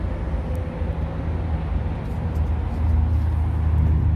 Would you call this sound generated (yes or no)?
no